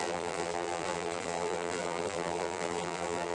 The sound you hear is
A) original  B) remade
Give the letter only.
B